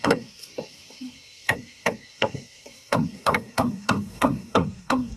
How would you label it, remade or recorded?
remade